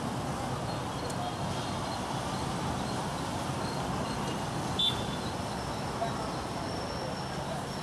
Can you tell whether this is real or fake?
real